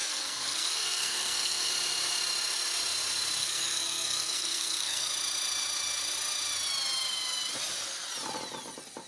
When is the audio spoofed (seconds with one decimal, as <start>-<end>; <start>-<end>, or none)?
0.0-1.7; 3.4-5.1